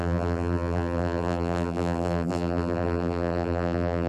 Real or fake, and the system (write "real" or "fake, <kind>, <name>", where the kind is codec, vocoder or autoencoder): fake, vocoder, BigVGAN v2